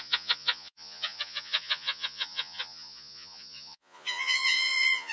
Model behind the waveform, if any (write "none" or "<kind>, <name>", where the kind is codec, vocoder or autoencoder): vocoder, Vocos